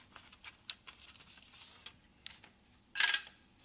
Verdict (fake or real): real